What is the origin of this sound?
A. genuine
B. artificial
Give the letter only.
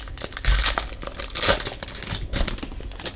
A